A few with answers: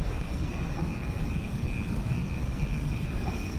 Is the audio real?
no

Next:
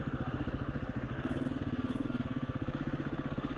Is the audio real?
no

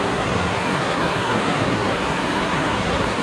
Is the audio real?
no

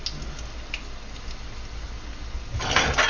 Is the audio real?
yes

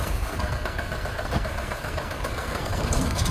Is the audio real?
no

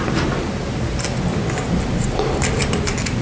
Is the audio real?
yes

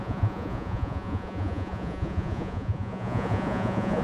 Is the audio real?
no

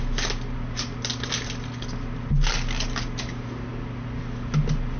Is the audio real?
yes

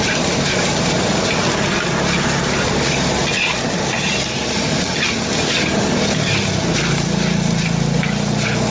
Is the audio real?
yes